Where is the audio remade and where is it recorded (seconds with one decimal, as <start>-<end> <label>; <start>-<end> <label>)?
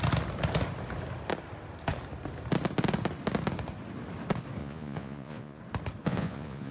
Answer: 0.0-4.6 recorded; 4.6-5.6 remade; 5.6-6.0 recorded; 6.0-6.7 remade